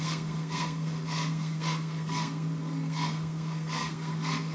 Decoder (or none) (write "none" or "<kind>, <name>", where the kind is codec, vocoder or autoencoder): codec, SNAC